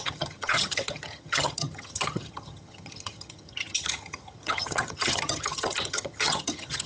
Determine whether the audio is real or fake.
fake